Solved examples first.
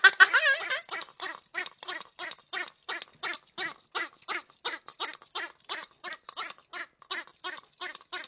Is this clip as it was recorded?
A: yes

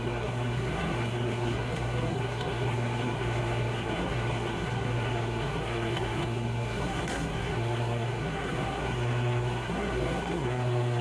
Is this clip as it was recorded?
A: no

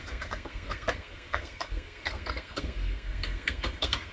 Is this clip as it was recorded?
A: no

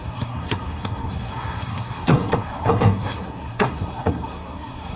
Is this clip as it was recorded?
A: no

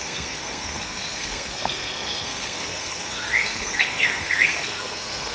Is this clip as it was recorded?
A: no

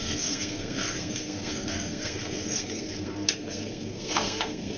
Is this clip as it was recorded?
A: no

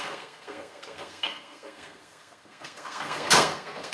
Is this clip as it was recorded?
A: no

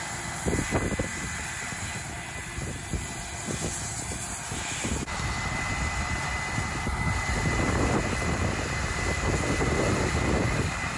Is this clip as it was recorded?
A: yes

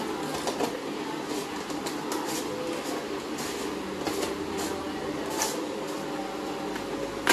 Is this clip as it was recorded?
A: yes